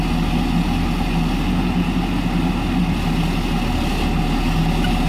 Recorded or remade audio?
recorded